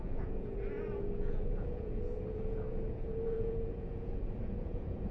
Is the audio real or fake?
fake